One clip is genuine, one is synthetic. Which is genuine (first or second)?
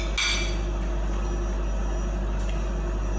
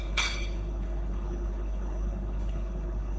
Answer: first